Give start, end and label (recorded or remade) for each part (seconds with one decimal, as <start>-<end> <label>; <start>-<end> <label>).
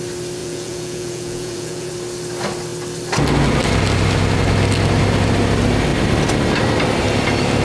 0.0-0.4 recorded; 0.4-1.9 remade; 1.9-7.6 recorded